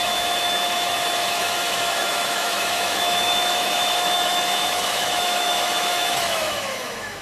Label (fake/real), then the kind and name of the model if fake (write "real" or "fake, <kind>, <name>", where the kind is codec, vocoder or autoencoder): fake, autoencoder, DAC-VAE